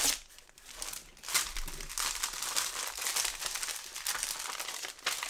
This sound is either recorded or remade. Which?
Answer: recorded